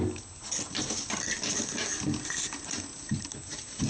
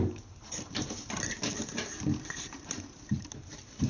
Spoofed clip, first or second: second